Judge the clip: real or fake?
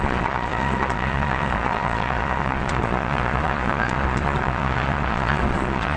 fake